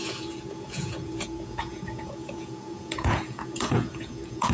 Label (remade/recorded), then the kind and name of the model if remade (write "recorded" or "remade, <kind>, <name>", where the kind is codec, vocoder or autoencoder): remade, vocoder, Vocos